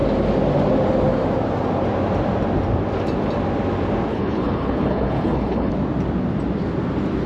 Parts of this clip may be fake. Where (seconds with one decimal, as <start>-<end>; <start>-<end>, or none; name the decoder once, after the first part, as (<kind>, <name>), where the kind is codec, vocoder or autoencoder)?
4.1-5.7 (codec, HILCodec)